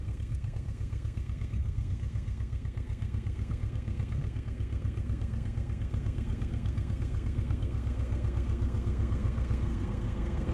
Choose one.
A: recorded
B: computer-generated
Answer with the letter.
B